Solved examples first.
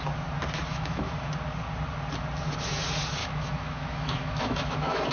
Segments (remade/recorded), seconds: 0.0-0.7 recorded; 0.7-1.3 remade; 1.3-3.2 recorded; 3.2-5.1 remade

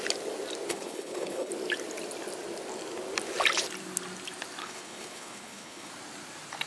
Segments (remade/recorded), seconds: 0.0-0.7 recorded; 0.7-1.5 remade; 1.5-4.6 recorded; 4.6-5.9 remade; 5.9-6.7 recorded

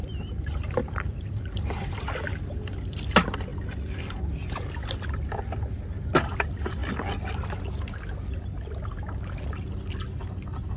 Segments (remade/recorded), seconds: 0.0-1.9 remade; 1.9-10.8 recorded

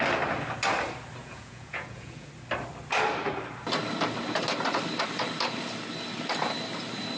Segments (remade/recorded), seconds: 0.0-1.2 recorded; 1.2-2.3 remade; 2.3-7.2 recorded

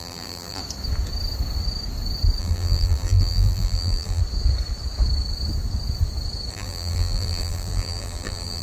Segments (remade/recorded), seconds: 0.0-0.6 remade; 0.6-2.4 recorded; 2.4-4.2 remade; 4.2-6.5 recorded; 6.5-8.6 remade